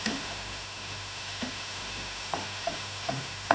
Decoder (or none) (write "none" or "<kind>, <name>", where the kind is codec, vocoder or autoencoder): autoencoder, DAC-VAE